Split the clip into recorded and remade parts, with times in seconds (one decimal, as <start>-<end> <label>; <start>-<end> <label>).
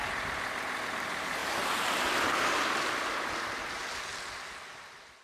0.0-5.2 recorded